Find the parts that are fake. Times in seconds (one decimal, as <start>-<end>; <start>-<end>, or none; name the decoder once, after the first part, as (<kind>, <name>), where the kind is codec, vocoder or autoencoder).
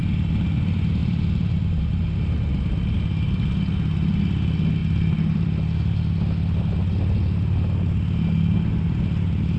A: 1.0-1.8 (vocoder, BigVGAN v2); 4.8-6.0